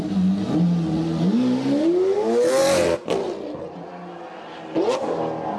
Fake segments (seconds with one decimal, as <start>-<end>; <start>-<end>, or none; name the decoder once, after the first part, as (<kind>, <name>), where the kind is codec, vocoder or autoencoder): 2.6-4.8 (vocoder, BigVGAN v2)